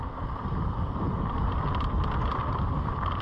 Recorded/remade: remade